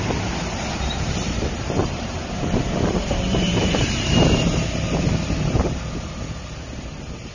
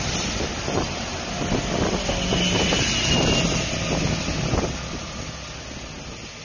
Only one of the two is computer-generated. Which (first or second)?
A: first